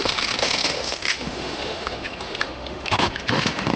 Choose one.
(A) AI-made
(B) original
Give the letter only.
A